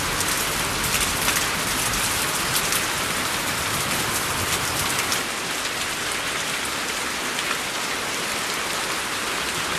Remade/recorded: recorded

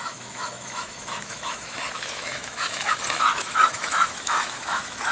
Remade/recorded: remade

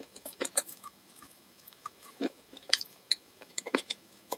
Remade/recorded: remade